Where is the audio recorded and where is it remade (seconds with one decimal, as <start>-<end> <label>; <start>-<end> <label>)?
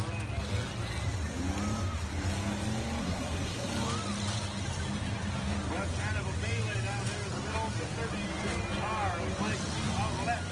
0.0-3.0 recorded; 3.0-3.7 remade; 3.7-10.5 recorded